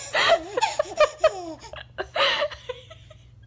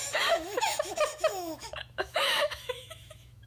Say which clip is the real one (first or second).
first